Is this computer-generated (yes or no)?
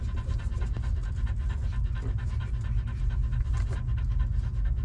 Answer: no